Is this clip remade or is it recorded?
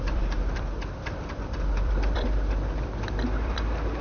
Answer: remade